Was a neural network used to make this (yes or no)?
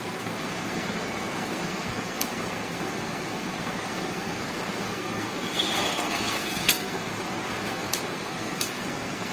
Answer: yes